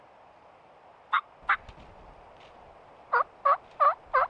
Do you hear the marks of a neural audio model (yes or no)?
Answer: no